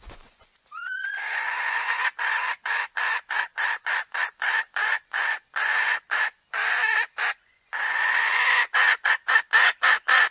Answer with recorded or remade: remade